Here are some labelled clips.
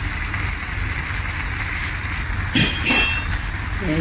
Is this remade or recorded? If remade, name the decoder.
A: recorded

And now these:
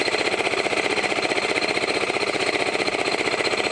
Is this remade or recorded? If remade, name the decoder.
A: recorded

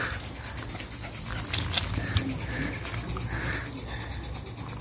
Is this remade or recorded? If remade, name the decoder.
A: recorded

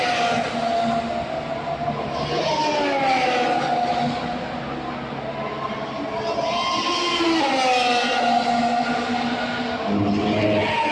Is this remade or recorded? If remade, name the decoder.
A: recorded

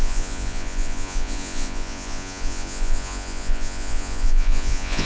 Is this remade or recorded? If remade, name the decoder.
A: remade, vocoder, Vocos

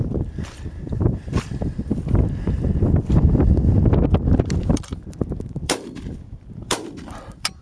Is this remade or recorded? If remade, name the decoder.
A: remade, vocoder, BigVGAN v2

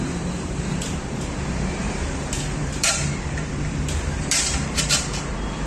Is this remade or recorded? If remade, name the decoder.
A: remade, vocoder, BigVGAN v2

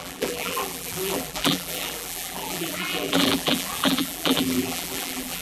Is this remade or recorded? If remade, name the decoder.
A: remade, vocoder, BigVGAN v2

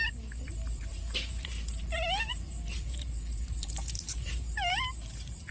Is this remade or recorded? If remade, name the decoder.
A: remade, vocoder, BigVGAN v2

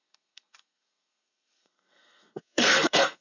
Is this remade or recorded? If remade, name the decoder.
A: remade, codec, SNAC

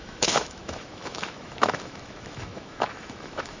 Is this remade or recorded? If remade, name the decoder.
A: remade, autoencoder, DAC-VAE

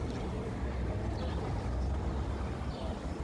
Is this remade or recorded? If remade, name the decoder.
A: recorded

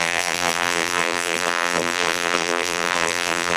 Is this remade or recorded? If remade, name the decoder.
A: remade, vocoder, BigVGAN v2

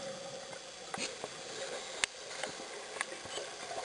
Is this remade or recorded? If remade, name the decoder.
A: recorded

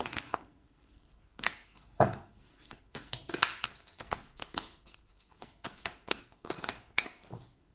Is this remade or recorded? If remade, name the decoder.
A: remade, codec, SNAC